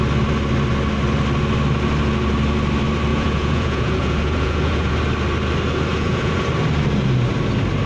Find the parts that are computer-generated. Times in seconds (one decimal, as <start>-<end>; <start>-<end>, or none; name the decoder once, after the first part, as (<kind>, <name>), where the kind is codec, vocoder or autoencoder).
3.1-4.9 (vocoder, Vocos); 5.9-6.5